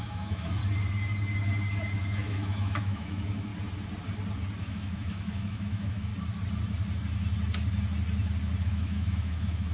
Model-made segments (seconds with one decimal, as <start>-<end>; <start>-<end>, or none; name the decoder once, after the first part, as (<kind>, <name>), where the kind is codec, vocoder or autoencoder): 0.0-0.6 (autoencoder, DAC-VAE); 2.0-3.5; 4.6-6.1; 8.6-9.7